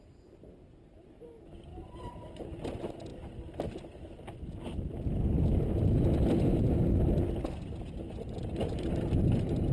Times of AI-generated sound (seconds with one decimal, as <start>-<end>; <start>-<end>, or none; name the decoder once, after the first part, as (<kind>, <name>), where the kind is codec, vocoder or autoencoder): 1.7-2.5 (vocoder, BigVGAN v2); 8.6-9.1